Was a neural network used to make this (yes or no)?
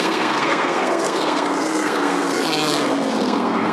yes